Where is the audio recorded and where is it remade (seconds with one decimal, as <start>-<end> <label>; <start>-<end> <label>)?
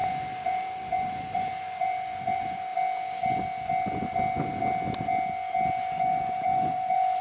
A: 0.0-2.7 remade; 2.7-6.0 recorded; 6.0-7.2 remade